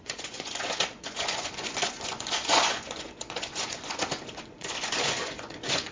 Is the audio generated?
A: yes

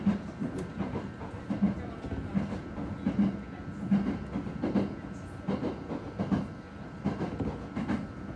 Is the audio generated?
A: no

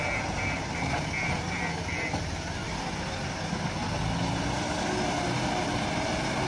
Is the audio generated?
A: no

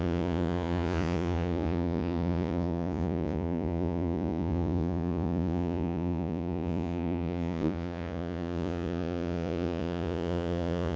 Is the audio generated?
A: yes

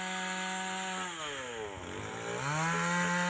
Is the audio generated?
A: no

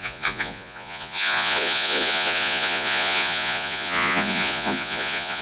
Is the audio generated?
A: yes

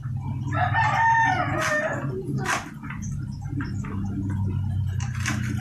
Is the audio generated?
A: no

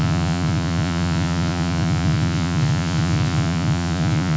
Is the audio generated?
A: yes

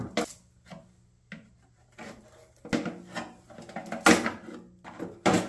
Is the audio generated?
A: no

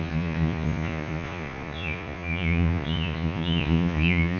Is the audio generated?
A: yes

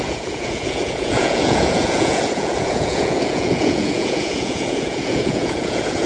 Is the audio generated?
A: yes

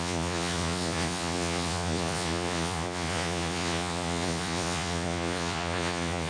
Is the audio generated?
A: yes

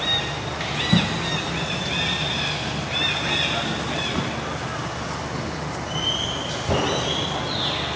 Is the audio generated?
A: no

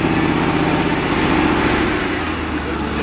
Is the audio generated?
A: no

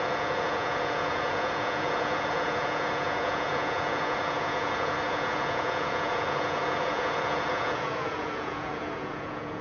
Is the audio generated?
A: yes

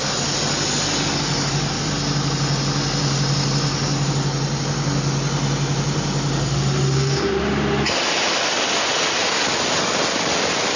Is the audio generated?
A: no